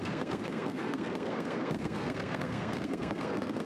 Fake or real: fake